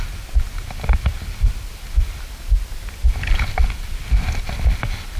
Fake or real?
real